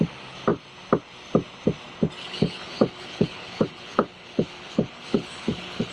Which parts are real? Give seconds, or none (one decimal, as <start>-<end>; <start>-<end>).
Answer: 0.0-2.2